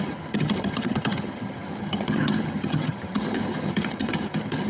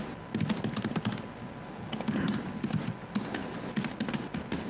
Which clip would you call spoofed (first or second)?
first